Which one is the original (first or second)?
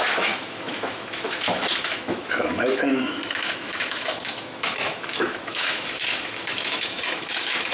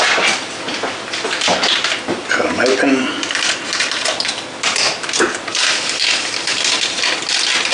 second